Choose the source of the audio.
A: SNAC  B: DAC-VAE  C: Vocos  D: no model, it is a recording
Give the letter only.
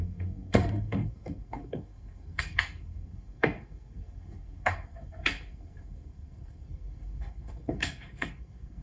A